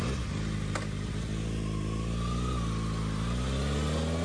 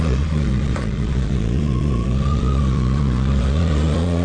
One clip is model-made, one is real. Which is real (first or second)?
first